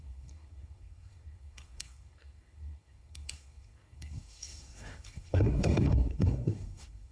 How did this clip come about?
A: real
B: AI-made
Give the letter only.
B